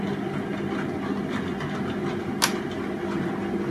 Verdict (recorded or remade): recorded